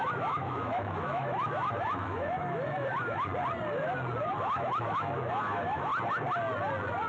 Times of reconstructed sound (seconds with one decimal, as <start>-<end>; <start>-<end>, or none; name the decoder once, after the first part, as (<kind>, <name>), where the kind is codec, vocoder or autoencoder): 0.0-3.3 (autoencoder, DAC-VAE); 4.4-5.9